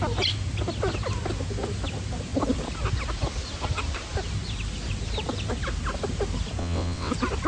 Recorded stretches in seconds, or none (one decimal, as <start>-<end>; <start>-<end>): 0.0-6.6; 7.1-7.5